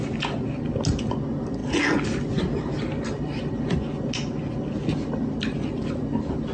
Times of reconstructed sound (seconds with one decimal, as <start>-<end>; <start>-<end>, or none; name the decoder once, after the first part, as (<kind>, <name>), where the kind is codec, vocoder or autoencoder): none